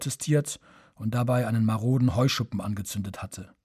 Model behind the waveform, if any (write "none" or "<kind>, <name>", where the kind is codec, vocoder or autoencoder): none